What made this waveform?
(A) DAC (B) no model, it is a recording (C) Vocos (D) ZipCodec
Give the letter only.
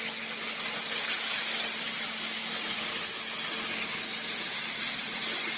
B